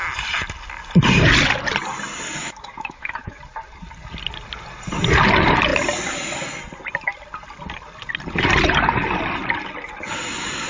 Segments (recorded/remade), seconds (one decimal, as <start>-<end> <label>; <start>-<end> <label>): 0.0-2.4 recorded; 2.4-3.4 remade; 3.4-10.7 recorded